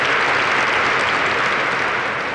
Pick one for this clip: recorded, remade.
recorded